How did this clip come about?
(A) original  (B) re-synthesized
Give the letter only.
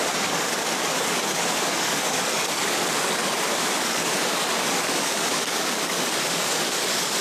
B